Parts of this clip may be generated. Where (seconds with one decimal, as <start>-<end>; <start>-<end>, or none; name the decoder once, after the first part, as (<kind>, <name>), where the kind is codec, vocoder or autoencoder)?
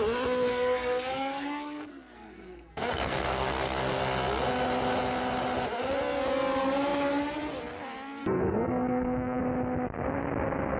0.5-4.0 (codec, SNAC); 8.2-9.4